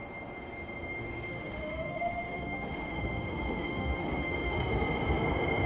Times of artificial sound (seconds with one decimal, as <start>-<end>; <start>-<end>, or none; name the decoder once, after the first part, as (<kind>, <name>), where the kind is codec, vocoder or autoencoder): 1.3-4.7 (autoencoder, DAC-VAE)